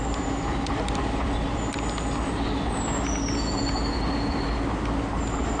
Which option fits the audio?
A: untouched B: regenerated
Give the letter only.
A